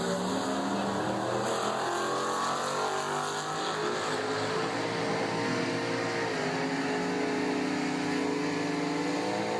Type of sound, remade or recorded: recorded